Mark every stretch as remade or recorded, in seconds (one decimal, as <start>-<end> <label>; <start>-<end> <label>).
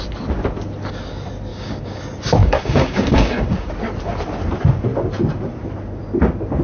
0.0-1.5 recorded; 1.5-2.0 remade; 2.0-2.4 recorded; 2.4-3.7 remade; 3.7-6.6 recorded